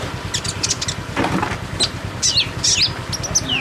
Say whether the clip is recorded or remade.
recorded